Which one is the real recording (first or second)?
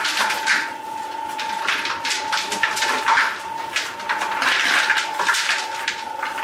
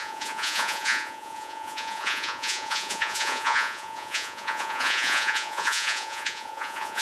first